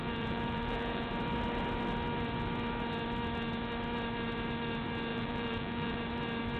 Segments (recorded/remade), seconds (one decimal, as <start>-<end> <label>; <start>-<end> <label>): 0.0-1.1 remade; 1.1-5.1 recorded; 5.1-6.0 remade; 6.0-6.6 recorded